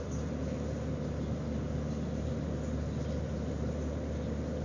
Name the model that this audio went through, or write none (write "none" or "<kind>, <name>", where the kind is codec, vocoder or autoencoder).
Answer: none